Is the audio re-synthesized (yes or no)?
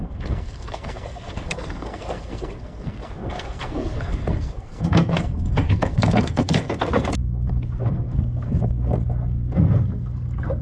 yes